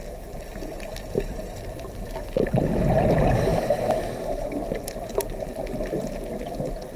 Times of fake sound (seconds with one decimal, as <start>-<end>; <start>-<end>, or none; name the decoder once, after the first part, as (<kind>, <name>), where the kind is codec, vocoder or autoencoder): 0.0-2.7 (vocoder, BigVGAN v2)